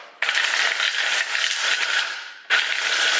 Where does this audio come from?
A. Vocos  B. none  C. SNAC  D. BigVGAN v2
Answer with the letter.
B